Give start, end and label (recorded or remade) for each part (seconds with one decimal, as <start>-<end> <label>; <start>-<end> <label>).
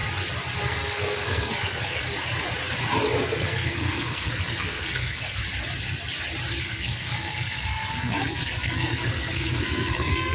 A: 0.0-0.6 recorded; 0.6-2.0 remade; 2.0-3.2 recorded; 3.2-5.4 remade; 5.4-6.6 recorded; 6.6-10.3 remade